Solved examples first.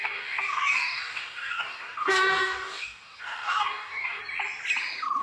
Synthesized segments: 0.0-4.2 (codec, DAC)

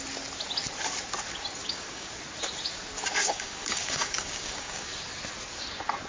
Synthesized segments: 1.6-2.1 (codec, DAC); 3.2-4.9

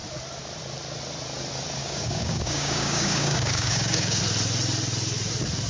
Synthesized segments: 1.8-4.2 (codec, DAC)

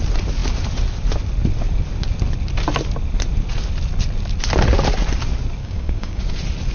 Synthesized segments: 5.6-6.2 (codec, DAC)

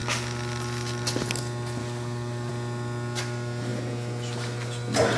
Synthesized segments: 1.8-2.5 (codec, DAC)

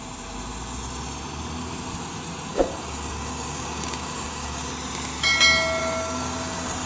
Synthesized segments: 2.5-4.7 (codec, DAC); 5.8-6.9